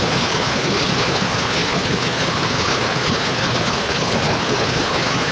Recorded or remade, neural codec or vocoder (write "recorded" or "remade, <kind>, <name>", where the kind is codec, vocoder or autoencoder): remade, codec, HILCodec